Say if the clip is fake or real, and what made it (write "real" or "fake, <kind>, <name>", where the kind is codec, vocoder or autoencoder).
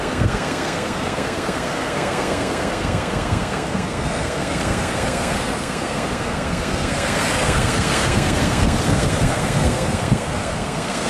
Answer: fake, codec, SNAC